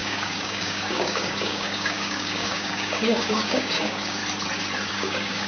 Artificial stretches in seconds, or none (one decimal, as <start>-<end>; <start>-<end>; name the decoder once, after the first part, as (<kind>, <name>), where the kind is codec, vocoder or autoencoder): 0.0-4.2 (codec, DAC); 4.9-5.5